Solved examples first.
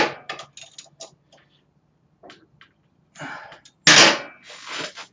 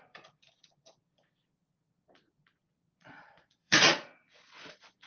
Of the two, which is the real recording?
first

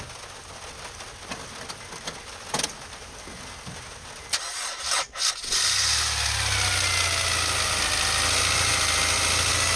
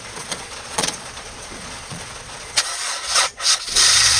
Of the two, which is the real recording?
first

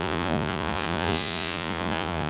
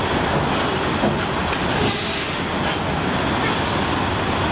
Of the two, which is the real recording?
second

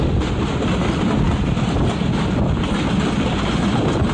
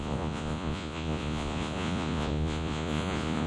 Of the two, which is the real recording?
first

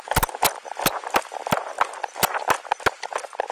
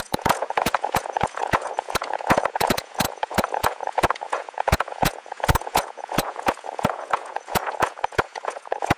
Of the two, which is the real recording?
first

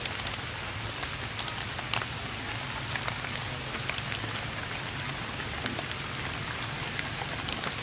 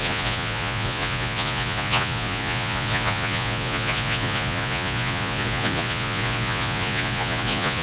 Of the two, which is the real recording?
first